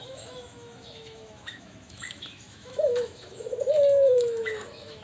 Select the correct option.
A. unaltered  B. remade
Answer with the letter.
B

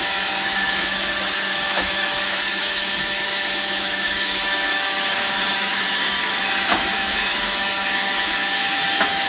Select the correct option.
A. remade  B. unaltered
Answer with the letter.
A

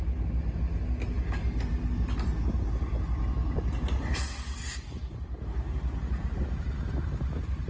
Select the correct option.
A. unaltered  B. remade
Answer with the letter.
A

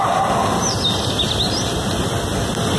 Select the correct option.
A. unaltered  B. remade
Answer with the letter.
A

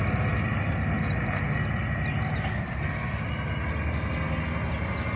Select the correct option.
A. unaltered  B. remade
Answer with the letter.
A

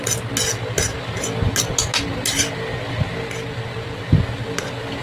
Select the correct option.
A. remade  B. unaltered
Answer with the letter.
B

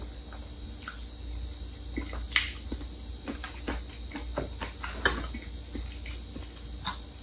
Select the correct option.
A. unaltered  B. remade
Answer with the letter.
A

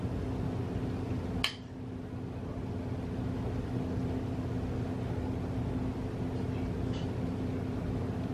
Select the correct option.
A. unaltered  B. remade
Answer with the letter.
A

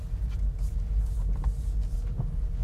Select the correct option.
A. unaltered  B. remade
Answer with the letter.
A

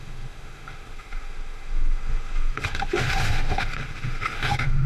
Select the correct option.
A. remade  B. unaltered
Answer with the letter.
A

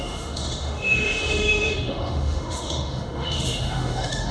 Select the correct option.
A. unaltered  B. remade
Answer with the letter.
B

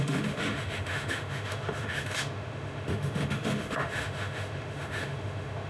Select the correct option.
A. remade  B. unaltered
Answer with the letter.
A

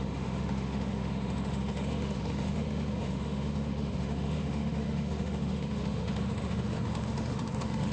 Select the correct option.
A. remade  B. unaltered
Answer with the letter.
A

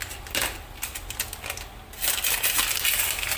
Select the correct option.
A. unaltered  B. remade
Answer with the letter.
A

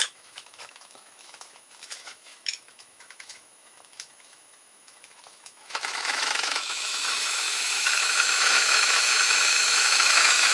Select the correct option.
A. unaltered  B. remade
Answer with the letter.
B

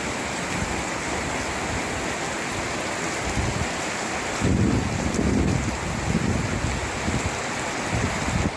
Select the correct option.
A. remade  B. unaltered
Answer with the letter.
B